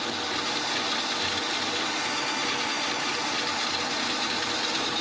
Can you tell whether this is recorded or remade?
recorded